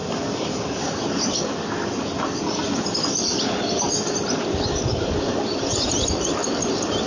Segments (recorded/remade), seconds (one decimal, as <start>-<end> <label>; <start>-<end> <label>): 0.0-0.9 remade; 0.9-2.6 recorded; 2.6-3.4 remade; 3.4-6.4 recorded; 6.4-7.1 remade

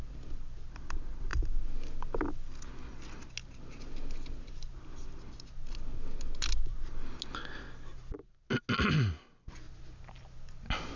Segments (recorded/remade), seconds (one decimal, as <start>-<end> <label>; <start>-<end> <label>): 0.0-11.0 recorded

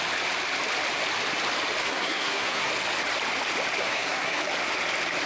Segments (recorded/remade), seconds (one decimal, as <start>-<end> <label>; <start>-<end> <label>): 0.0-1.8 recorded; 1.8-2.7 remade; 2.7-3.8 recorded; 3.8-4.4 remade; 4.4-5.3 recorded

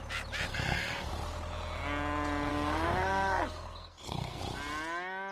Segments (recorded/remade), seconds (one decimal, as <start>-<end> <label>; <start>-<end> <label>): 0.0-0.5 recorded; 0.5-1.1 remade; 1.1-2.5 recorded; 2.5-4.4 remade; 4.4-5.3 recorded

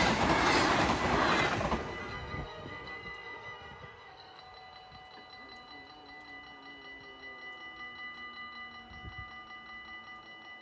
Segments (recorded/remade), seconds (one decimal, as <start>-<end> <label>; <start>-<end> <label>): 0.0-2.0 recorded; 2.0-4.4 remade; 4.4-10.6 recorded

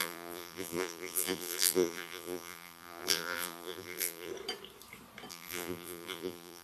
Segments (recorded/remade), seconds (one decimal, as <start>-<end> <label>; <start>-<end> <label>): 0.0-4.3 remade; 4.3-5.3 recorded; 5.3-6.6 remade

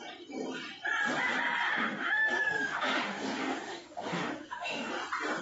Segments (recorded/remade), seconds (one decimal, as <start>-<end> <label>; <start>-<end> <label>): 0.0-1.7 recorded; 1.7-4.9 remade; 4.9-5.4 recorded

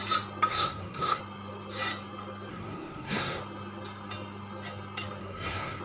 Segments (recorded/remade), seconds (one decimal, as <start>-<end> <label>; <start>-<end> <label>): 0.0-0.5 recorded; 0.5-1.2 remade; 1.2-2.5 recorded; 2.5-3.4 remade; 3.4-5.2 recorded; 5.2-5.8 remade